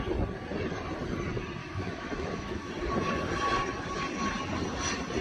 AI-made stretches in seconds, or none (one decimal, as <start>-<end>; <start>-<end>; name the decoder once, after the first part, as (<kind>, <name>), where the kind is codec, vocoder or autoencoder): 1.6-2.7 (autoencoder, DAC-VAE)